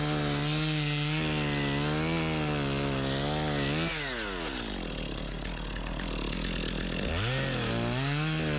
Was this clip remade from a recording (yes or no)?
no